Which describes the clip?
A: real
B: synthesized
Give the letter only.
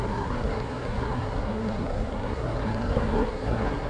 B